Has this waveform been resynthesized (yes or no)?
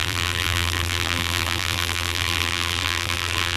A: yes